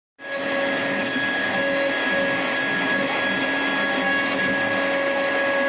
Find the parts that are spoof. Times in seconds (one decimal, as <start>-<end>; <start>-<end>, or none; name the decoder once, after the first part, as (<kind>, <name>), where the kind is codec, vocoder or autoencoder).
none